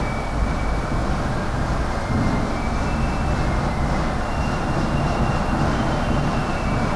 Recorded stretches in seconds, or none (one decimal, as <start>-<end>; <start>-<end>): 0.0-7.0